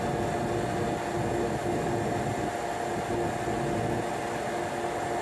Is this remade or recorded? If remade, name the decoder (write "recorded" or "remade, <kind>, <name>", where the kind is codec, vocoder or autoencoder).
recorded